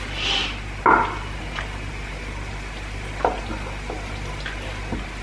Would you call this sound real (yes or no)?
yes